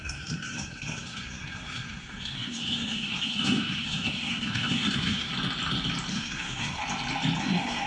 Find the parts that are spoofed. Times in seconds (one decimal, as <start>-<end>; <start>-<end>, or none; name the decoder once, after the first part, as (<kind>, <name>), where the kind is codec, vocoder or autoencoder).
0.0-5.3 (codec, SNAC); 6.1-6.8; 7.4-7.9